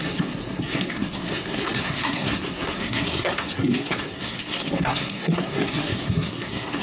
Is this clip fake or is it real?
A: fake